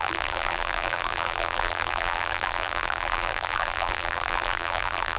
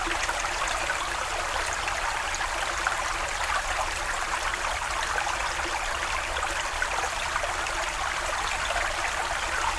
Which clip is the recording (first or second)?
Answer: second